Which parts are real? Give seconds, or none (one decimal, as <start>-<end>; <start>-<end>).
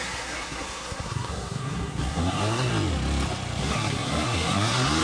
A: 2.7-3.6